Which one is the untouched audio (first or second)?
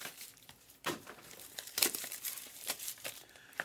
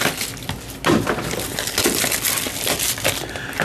second